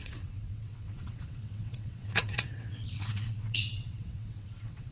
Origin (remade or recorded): remade